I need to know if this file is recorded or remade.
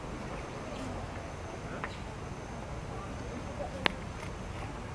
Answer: recorded